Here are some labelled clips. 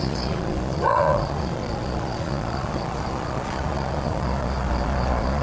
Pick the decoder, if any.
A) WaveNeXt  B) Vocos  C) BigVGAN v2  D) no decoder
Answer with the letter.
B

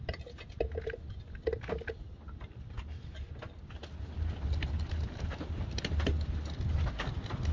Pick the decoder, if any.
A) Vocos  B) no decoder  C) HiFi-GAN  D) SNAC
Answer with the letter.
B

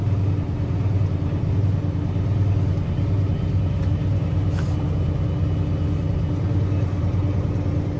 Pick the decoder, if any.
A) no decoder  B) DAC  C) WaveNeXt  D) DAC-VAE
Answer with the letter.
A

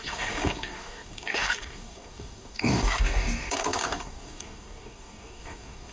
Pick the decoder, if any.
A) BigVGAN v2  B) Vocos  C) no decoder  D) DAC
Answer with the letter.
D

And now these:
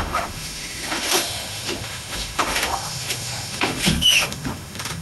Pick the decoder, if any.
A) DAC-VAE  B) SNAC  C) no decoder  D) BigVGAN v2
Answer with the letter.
A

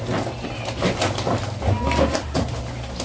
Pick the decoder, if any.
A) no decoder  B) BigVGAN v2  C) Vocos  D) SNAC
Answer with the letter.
A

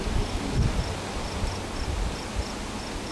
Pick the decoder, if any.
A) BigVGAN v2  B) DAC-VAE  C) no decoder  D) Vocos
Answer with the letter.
C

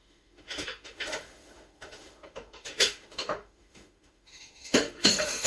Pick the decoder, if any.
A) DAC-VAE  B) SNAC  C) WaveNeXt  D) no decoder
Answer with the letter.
A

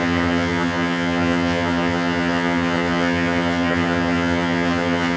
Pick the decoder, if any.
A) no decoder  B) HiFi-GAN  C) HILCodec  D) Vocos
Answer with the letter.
B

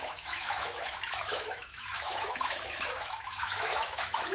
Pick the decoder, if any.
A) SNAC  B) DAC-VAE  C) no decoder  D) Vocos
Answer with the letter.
B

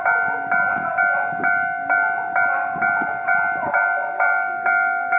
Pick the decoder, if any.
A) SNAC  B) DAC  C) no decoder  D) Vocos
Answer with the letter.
C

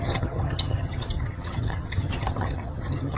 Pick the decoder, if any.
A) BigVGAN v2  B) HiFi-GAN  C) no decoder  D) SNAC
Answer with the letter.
B